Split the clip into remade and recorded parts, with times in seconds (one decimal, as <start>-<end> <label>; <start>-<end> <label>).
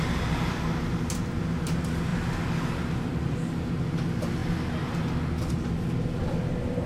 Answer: 0.0-6.9 recorded